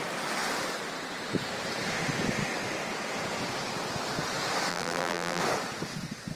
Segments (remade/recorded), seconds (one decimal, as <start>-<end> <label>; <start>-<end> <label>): 0.0-4.7 recorded; 4.7-5.4 remade; 5.4-6.4 recorded